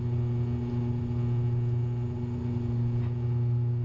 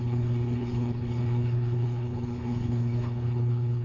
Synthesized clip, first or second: second